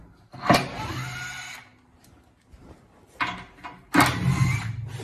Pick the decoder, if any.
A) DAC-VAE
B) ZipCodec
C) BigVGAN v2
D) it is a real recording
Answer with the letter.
D